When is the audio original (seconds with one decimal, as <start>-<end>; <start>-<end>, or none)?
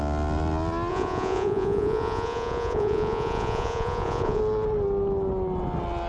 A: 0.0-0.9; 4.4-6.1